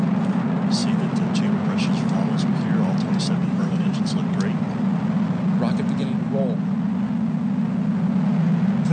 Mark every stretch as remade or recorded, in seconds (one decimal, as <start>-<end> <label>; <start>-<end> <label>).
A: 0.0-3.4 recorded; 3.4-4.1 remade; 4.1-8.9 recorded